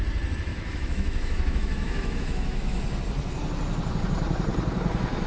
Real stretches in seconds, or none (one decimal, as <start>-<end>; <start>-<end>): 0.0-0.5; 2.8-5.3